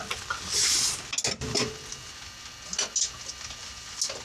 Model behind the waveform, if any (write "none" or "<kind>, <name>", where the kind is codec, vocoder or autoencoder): none